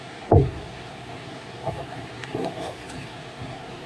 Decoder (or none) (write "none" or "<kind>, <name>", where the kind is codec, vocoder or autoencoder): codec, SNAC